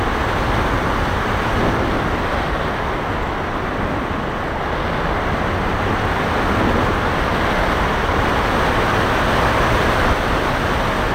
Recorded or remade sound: recorded